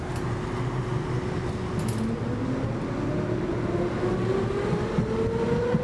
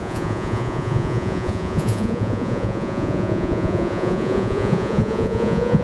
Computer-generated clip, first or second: second